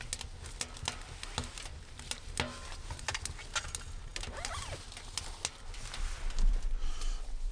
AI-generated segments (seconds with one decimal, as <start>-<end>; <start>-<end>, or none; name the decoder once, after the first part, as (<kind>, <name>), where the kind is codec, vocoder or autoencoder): none